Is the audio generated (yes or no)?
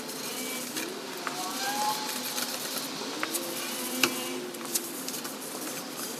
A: yes